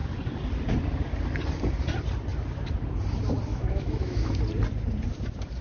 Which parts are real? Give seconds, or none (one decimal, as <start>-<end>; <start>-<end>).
0.0-3.5; 4.4-5.6